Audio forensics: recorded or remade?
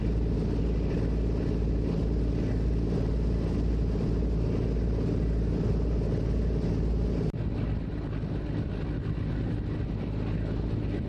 recorded